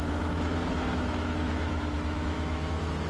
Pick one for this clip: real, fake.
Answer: fake